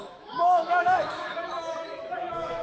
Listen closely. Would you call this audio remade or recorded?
remade